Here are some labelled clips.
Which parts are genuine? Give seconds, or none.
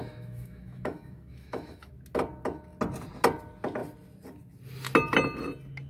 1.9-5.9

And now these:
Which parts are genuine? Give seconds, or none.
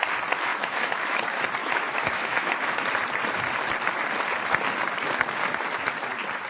0.0-0.5; 1.2-1.6; 2.8-6.5